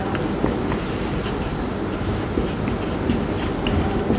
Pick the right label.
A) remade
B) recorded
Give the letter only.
B